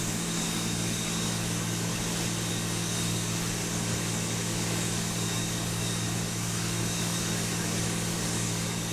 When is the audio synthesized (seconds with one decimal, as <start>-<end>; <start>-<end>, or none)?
0.0-1.9; 2.5-8.9